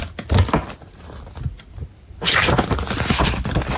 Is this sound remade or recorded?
recorded